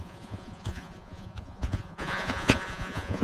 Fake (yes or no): yes